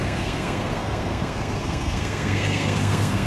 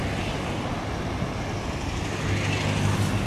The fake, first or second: first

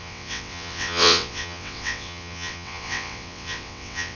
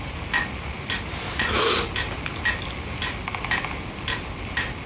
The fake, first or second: first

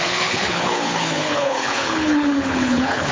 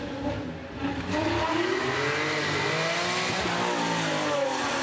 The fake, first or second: first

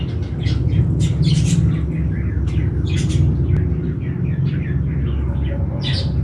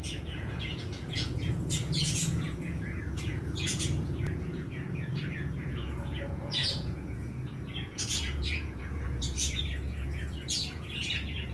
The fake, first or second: second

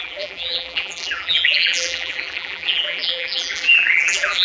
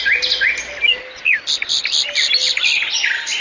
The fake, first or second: first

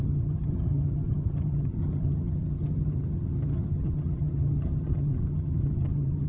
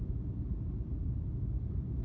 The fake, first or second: first